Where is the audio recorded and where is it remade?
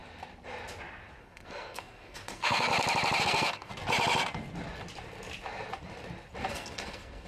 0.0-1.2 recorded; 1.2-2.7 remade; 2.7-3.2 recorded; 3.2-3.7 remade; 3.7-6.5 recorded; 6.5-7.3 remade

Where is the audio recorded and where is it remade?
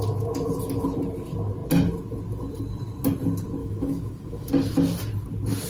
0.0-3.6 recorded; 3.6-4.5 remade; 4.5-5.7 recorded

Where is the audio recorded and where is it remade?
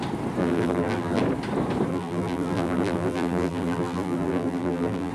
0.0-0.4 recorded; 0.4-1.2 remade; 1.2-1.9 recorded; 1.9-5.1 remade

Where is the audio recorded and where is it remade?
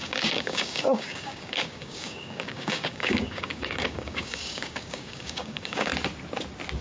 0.0-5.9 remade; 5.9-6.8 recorded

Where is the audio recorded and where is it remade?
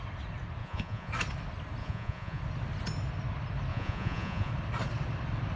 0.0-0.6 recorded; 0.6-1.1 remade; 1.1-1.8 recorded; 1.8-2.4 remade; 2.4-3.7 recorded; 3.7-4.5 remade; 4.5-5.6 recorded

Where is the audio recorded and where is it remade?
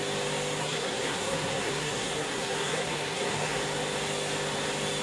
0.0-0.6 recorded; 0.6-3.6 remade; 3.6-5.0 recorded